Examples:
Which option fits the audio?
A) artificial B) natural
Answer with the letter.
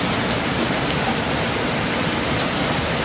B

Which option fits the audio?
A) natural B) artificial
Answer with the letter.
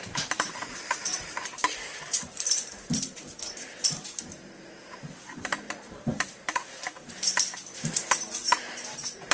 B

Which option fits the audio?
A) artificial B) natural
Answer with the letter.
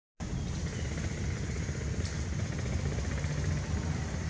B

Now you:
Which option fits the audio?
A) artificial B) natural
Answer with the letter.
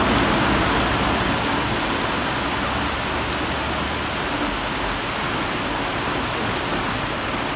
B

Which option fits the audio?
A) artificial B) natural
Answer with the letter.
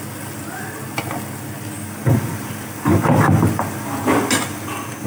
B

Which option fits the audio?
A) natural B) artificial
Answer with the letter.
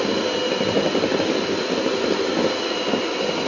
A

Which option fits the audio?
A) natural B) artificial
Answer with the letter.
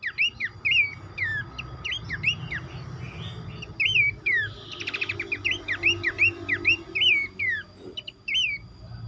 A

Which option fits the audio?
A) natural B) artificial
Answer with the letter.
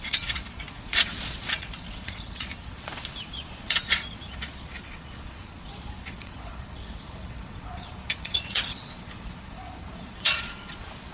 B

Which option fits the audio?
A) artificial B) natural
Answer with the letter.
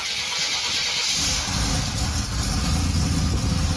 B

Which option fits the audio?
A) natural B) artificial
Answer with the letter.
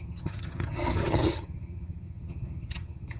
B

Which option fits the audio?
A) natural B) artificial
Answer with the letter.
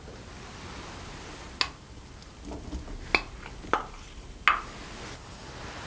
A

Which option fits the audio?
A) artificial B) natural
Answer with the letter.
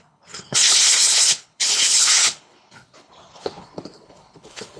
A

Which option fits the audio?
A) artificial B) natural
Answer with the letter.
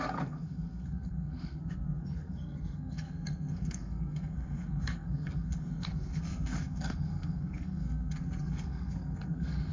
A